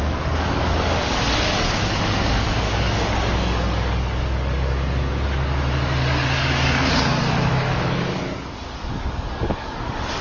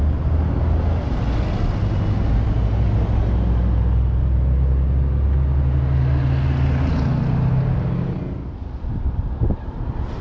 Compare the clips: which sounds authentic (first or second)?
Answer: second